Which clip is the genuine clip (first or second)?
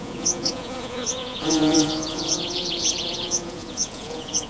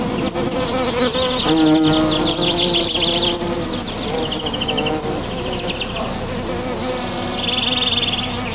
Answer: second